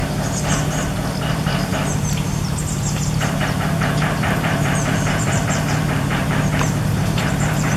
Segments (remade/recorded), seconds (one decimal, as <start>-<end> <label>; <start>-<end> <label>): 0.0-1.2 recorded; 1.2-7.8 remade

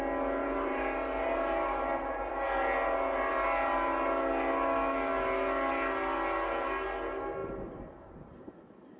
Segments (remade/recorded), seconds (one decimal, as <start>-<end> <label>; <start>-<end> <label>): 0.0-0.4 recorded; 0.4-2.3 remade; 2.3-7.4 recorded; 7.4-8.5 remade; 8.5-9.0 recorded